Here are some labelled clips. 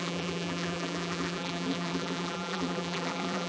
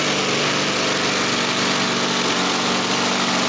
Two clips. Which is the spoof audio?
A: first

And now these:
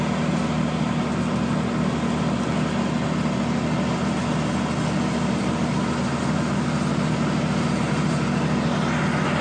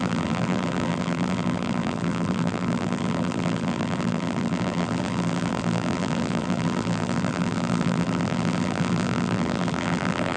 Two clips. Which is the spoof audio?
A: second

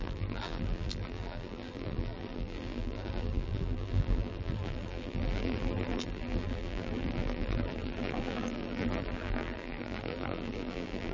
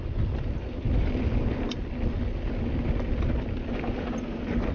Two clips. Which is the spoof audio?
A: first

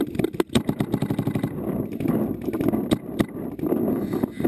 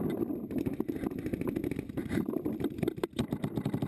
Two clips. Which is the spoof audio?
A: second